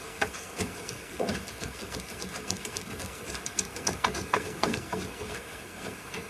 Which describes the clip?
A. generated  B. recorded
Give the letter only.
A